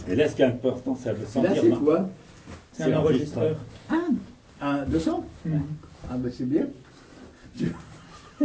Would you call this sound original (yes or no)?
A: yes